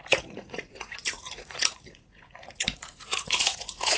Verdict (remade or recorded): remade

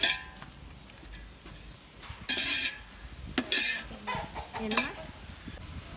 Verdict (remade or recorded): recorded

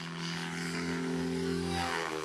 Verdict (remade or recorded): remade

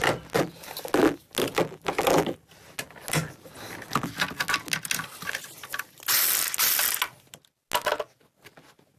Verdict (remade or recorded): recorded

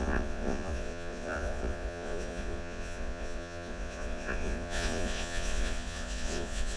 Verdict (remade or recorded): remade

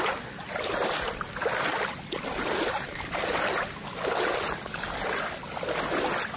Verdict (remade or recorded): recorded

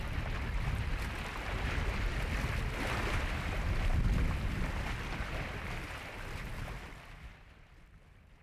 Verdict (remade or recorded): recorded